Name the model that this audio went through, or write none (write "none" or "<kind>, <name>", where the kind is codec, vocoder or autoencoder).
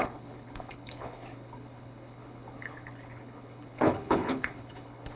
codec, HILCodec